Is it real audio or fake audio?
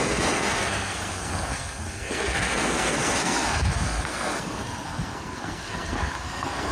fake